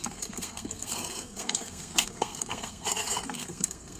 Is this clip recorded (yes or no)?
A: no